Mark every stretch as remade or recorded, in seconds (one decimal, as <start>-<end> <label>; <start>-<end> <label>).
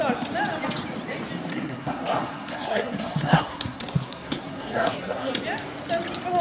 0.0-1.5 recorded; 1.5-5.3 remade; 5.3-6.4 recorded